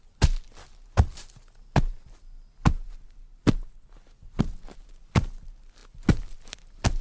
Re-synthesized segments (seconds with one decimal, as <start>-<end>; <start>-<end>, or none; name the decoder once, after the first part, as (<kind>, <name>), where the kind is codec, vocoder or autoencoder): none